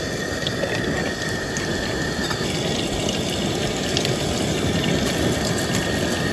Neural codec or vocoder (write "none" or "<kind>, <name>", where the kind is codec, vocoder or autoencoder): none